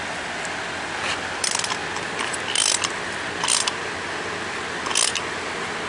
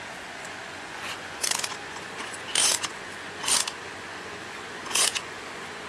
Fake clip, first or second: second